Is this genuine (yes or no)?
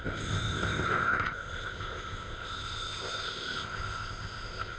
no